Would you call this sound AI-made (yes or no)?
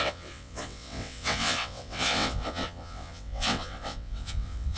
yes